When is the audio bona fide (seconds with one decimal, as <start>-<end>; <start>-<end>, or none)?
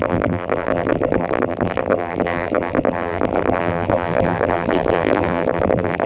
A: none